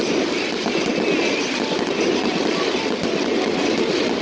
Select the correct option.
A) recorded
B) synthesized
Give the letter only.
A